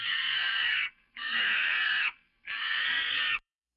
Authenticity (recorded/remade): remade